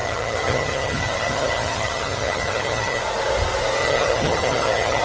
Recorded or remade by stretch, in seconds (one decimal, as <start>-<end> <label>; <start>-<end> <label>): 0.0-3.0 remade; 3.0-3.8 recorded; 3.8-5.0 remade